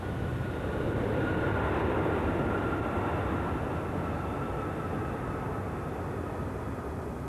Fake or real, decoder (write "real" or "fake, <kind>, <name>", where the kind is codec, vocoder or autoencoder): real